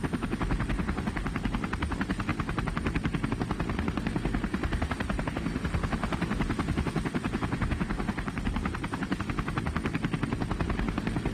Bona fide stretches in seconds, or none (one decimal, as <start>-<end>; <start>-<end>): 0.0-4.5; 5.2-6.0; 9.2-11.3